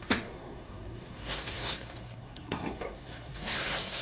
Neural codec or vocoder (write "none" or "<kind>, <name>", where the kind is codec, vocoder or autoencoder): codec, SNAC